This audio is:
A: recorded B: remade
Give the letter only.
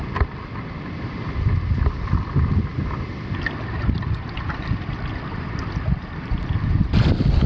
A